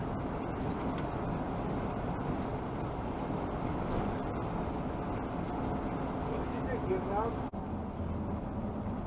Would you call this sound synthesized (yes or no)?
no